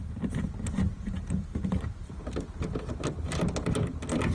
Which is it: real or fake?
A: real